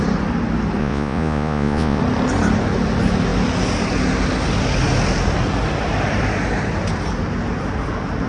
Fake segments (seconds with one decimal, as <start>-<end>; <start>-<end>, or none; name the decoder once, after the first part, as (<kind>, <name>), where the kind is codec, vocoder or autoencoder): 0.8-2.0 (vocoder, Vocos)